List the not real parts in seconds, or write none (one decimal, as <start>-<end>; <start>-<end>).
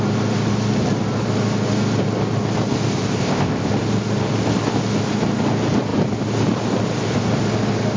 3.2-3.7